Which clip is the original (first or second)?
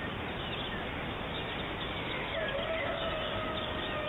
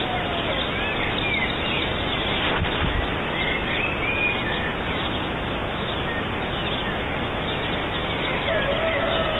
second